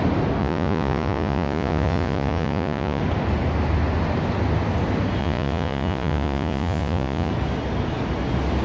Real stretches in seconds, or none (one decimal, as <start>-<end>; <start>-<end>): 0.0-0.4; 3.0-5.2; 7.3-8.6